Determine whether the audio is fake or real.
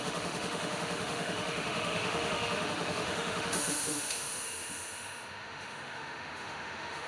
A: fake